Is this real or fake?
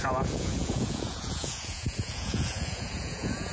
fake